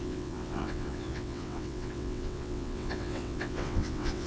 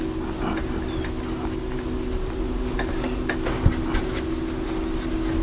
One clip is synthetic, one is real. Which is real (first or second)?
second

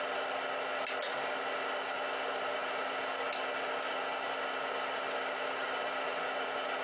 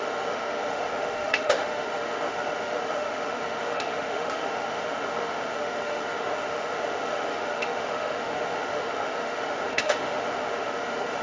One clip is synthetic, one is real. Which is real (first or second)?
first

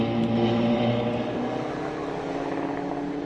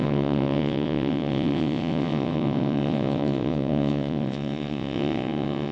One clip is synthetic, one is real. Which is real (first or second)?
first